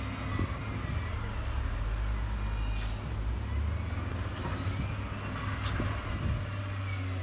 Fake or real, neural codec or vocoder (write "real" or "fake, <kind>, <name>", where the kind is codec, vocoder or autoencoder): real